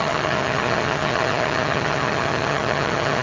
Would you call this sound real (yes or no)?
no